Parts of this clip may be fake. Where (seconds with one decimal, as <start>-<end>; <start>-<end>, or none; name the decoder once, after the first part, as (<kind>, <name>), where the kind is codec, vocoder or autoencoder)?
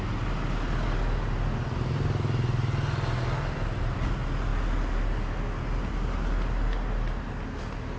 none